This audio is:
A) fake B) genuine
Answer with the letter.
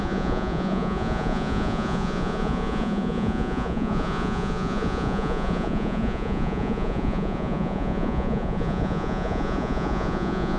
A